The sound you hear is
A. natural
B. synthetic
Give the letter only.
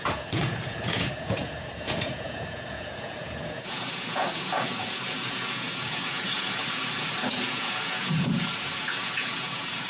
B